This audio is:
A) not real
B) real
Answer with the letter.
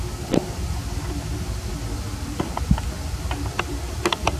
B